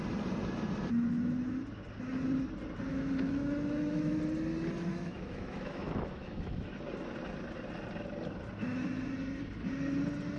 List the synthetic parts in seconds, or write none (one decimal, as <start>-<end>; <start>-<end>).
2.9-4.1; 4.9-6.7